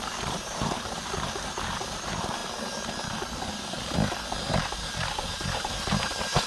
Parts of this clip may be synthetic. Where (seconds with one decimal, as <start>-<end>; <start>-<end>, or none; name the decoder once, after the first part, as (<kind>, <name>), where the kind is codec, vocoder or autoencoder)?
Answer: 0.0-2.4 (vocoder, BigVGAN v2); 4.6-6.5